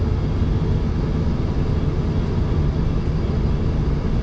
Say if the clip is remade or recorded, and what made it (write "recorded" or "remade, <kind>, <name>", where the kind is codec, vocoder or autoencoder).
recorded